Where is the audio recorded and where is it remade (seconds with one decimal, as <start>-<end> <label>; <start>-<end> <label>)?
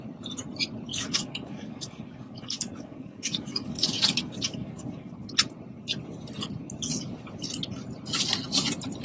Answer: 0.0-0.9 recorded; 0.9-5.3 remade; 5.3-9.0 recorded